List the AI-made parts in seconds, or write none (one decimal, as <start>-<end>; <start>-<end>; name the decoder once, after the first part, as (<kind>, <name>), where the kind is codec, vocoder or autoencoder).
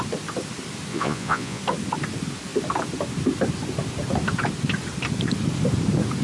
0.9-1.6 (vocoder, Vocos)